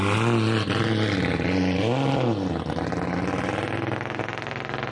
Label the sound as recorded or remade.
recorded